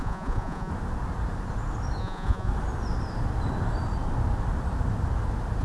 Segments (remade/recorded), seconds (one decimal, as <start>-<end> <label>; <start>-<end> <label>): 0.0-0.7 remade; 0.7-2.0 recorded; 2.0-2.5 remade; 2.5-5.6 recorded